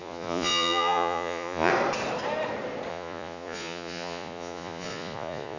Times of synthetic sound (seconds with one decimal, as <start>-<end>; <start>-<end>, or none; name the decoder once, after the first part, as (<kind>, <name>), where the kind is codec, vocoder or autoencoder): 0.0-1.7 (vocoder, Vocos); 2.9-5.6